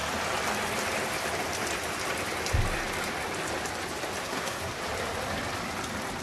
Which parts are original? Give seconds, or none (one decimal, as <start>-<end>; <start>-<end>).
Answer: 0.0-4.2; 4.7-6.2